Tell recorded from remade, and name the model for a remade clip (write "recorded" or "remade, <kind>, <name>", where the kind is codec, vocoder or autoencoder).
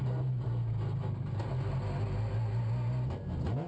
recorded